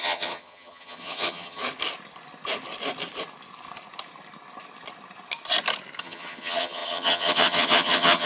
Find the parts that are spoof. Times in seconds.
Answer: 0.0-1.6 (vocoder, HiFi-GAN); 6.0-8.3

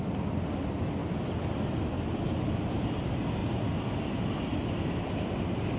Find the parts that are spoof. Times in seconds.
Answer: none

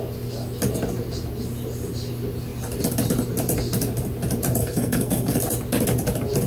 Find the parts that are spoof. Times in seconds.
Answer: 4.6-5.4 (codec, SNAC)

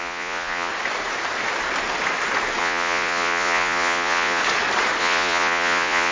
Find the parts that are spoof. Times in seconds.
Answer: 0.0-0.7 (vocoder, Vocos); 2.6-4.4; 5.0-6.1

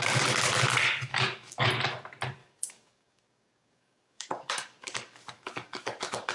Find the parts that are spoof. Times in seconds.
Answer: 1.1-1.7 (codec, DAC); 2.4-6.3